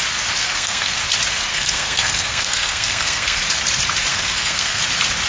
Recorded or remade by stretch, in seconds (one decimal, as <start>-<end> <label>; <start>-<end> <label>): 0.0-0.4 recorded; 0.4-1.0 remade; 1.0-1.5 recorded; 1.5-3.4 remade; 3.4-4.1 recorded; 4.1-4.8 remade; 4.8-5.3 recorded